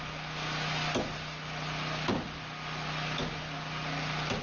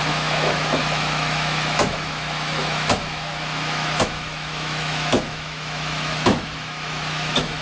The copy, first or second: second